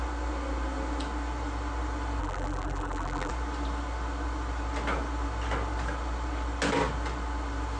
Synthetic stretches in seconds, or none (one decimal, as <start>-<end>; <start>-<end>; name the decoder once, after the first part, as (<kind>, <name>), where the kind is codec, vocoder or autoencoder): 2.2-3.3 (vocoder, BigVGAN v2)